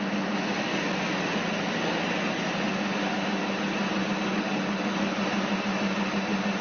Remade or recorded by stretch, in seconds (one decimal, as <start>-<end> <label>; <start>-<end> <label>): 0.0-6.6 recorded